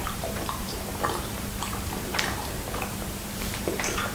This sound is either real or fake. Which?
fake